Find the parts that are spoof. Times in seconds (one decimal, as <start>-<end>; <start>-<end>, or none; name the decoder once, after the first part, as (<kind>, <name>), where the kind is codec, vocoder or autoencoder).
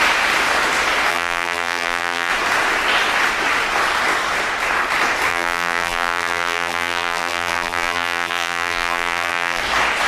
1.1-2.3 (vocoder, BigVGAN v2); 5.3-9.6